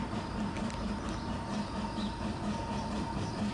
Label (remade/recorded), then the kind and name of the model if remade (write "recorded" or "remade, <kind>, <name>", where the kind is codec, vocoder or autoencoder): recorded